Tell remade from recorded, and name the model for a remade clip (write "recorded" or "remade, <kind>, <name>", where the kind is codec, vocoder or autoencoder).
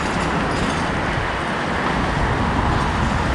recorded